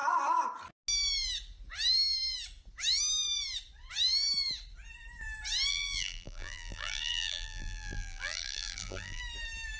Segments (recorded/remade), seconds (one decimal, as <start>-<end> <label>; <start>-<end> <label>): 0.0-5.7 recorded; 5.7-9.2 remade; 9.2-9.8 recorded